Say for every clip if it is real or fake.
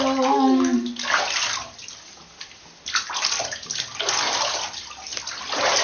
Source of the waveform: real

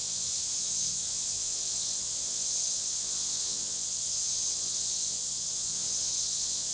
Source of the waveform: fake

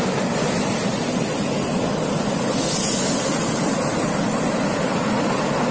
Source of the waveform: real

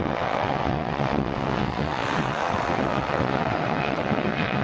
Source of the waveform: fake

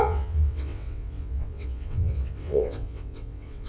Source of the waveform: fake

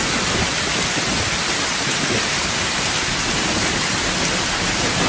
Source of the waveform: real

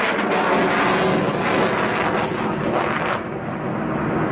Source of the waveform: real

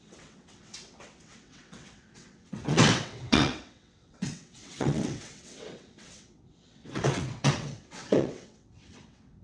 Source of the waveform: fake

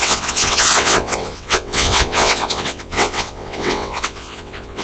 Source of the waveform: fake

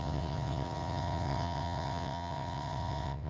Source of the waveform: fake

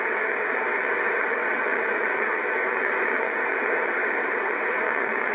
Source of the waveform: fake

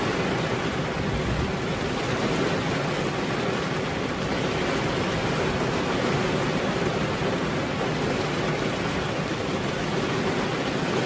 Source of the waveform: real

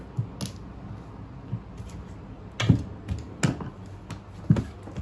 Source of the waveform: real